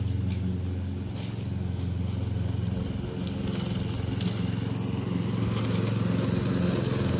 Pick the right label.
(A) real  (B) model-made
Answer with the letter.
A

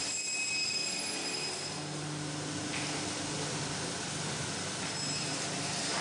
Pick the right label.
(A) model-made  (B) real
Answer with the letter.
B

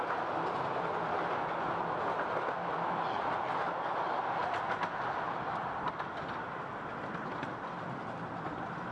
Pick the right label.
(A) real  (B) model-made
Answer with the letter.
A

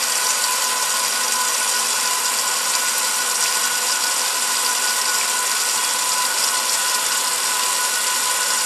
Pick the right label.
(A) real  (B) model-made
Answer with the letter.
A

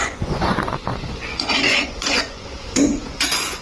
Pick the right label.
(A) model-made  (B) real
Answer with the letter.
A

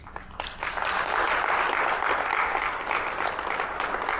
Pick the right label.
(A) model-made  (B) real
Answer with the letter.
B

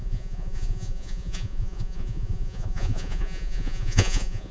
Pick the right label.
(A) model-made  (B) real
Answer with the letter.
A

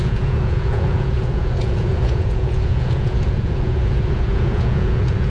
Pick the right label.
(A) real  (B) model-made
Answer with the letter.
B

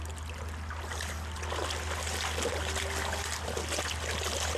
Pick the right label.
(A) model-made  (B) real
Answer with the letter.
B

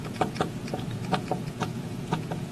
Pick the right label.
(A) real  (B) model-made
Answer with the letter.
B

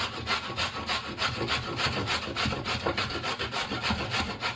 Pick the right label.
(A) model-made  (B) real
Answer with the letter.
B